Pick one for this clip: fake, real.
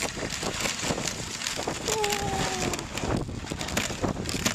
real